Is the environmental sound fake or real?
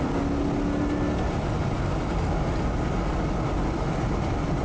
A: real